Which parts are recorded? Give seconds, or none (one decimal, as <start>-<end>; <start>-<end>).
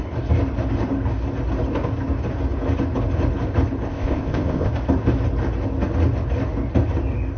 0.0-3.9; 4.7-7.4